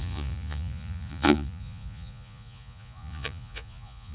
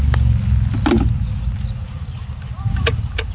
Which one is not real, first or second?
first